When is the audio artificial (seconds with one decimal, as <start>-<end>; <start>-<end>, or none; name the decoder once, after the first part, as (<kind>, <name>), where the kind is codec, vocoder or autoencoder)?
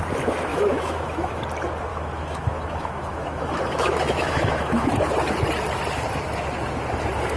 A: 0.5-1.4 (autoencoder, DAC-VAE); 1.9-4.9